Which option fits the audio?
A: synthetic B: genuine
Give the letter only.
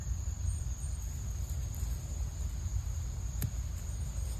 B